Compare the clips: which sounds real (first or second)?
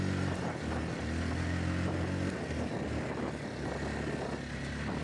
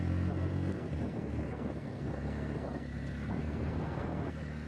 first